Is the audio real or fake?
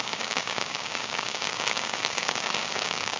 fake